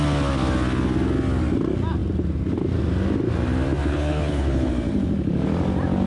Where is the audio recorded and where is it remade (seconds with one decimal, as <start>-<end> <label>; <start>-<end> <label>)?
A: 0.0-3.9 recorded; 3.9-4.7 remade; 4.7-6.1 recorded